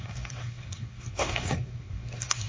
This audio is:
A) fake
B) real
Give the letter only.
A